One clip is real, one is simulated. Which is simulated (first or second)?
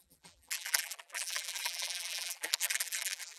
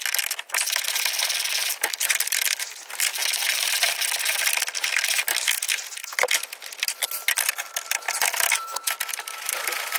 first